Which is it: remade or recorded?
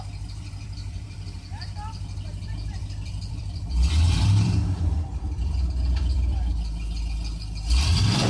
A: remade